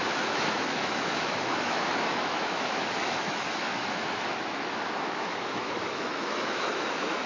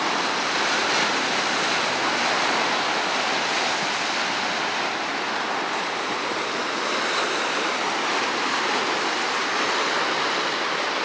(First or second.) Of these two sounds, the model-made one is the first